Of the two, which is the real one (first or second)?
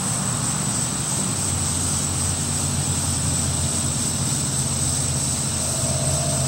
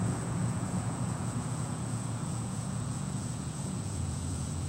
first